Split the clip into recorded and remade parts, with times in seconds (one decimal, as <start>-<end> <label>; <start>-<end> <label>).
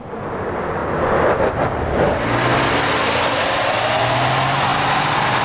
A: 0.0-5.4 recorded